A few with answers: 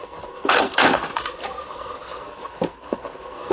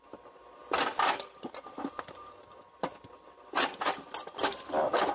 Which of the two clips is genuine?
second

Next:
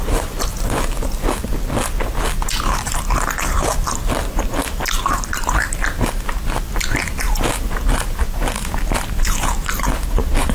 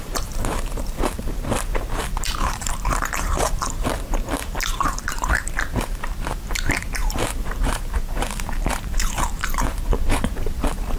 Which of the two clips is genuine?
first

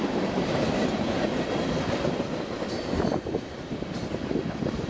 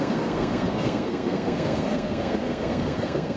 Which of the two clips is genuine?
first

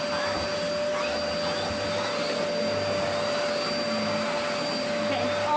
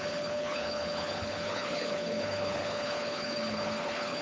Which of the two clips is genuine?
first